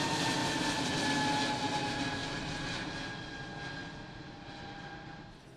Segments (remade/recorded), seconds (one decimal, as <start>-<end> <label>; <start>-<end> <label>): 0.0-0.4 recorded; 0.4-0.9 remade; 0.9-2.2 recorded; 2.2-2.7 remade; 2.7-5.6 recorded